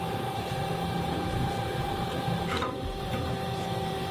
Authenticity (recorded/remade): remade